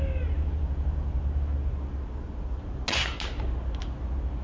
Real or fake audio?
real